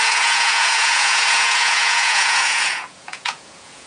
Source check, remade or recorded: remade